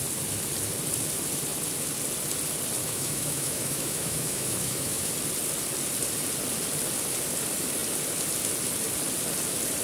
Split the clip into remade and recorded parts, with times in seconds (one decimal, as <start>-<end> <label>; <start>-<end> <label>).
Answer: 0.0-2.8 recorded; 2.8-5.1 remade; 5.1-9.8 recorded